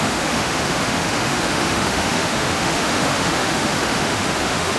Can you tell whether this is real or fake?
fake